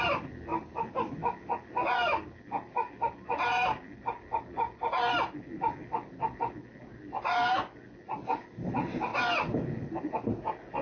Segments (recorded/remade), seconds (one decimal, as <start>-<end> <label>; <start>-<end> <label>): 0.0-10.8 recorded